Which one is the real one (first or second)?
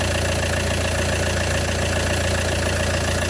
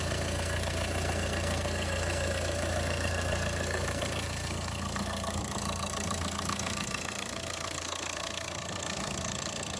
first